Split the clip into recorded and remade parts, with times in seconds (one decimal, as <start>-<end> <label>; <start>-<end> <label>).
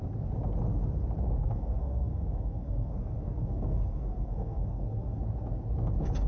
0.0-1.4 recorded; 1.4-5.2 remade; 5.2-6.3 recorded